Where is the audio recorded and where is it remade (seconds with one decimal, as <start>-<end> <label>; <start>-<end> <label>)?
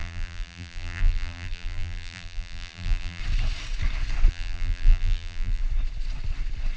0.0-3.2 remade; 3.2-4.3 recorded; 4.3-5.6 remade; 5.6-6.8 recorded